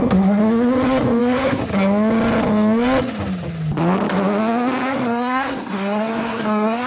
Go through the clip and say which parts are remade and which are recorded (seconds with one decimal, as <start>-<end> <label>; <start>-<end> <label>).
0.0-0.4 remade; 0.4-1.2 recorded; 1.2-1.6 remade; 1.6-4.9 recorded; 4.9-6.9 remade